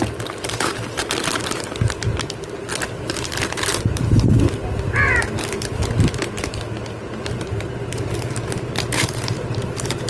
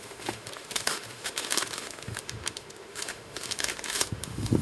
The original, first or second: first